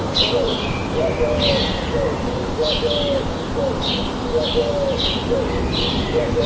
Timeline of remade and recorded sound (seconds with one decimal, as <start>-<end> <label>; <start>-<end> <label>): 0.0-6.5 recorded